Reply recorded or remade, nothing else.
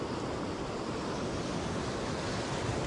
recorded